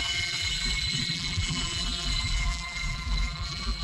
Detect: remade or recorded remade